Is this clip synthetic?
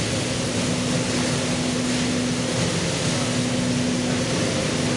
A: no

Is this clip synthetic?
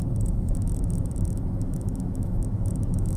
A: yes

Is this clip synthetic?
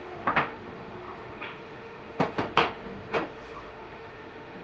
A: yes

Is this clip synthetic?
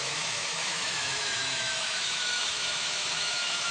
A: yes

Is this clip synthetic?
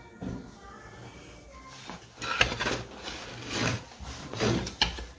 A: no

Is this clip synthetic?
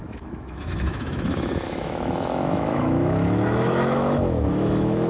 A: yes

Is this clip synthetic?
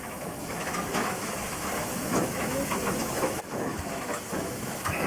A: yes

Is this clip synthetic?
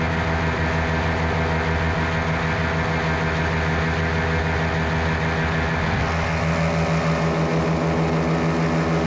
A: no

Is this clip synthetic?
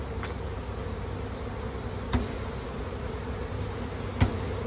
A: no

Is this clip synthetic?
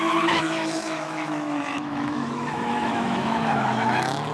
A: yes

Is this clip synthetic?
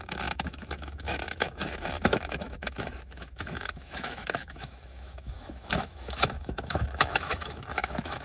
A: yes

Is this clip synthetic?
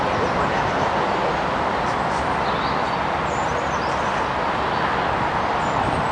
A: no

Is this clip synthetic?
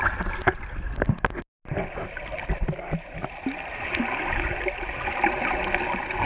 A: no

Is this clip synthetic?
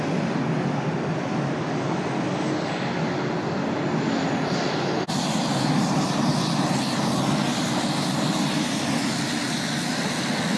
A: no